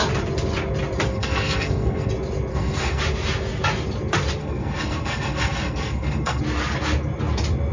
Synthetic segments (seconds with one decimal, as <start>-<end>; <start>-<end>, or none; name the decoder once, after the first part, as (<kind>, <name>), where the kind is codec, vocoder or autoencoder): 1.1-2.1 (codec, SNAC); 2.5-3.0; 4.4-6.4